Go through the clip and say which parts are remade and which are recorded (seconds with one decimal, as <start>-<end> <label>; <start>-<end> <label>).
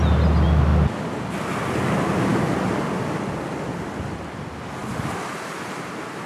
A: 0.0-6.3 recorded